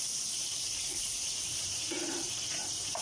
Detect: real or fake fake